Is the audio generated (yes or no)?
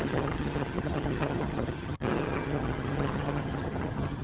yes